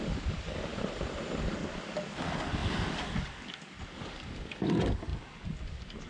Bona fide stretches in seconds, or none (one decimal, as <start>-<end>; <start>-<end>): 0.7-1.4